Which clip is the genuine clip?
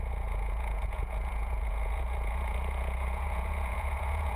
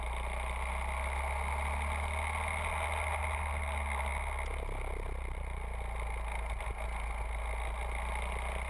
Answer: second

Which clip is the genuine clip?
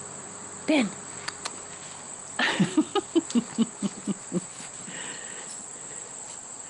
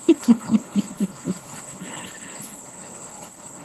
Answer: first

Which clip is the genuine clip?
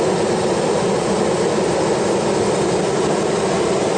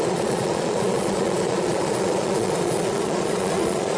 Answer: first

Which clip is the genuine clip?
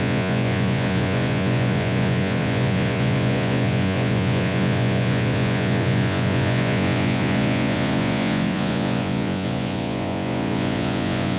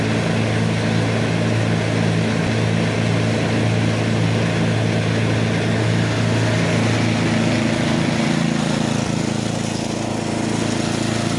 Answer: second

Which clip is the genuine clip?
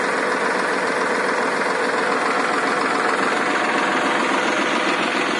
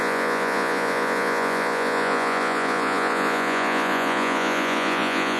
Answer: first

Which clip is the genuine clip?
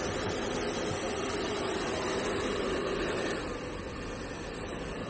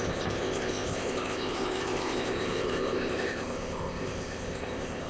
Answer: first